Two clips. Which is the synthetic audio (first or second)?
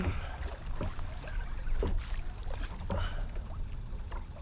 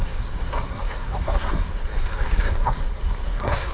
second